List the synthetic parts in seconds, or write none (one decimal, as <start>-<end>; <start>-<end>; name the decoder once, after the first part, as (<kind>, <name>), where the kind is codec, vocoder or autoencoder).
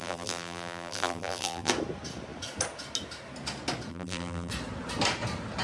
0.0-1.7 (vocoder, BigVGAN v2); 3.9-4.5